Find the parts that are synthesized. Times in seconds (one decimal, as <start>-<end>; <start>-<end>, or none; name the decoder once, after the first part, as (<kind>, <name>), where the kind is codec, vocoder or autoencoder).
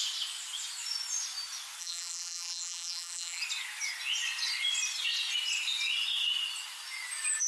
1.8-3.4 (vocoder, BigVGAN v2)